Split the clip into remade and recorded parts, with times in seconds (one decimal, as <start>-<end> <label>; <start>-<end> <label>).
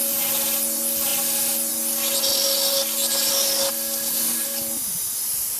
0.0-5.6 recorded